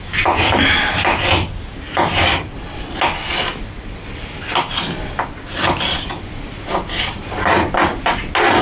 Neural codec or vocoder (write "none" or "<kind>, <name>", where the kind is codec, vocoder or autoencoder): none